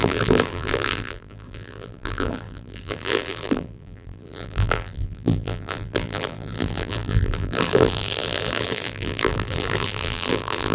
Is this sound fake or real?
fake